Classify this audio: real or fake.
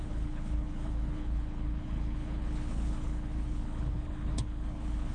fake